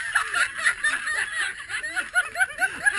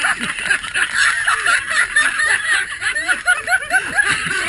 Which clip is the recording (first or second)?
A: first